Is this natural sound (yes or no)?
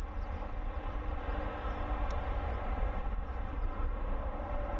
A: yes